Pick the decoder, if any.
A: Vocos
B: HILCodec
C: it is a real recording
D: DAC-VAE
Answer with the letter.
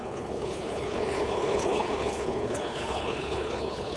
B